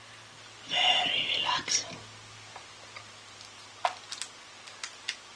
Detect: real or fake real